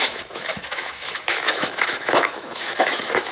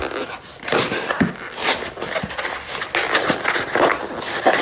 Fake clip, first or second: first